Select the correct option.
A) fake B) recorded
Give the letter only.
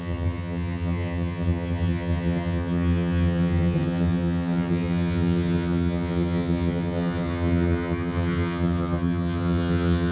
A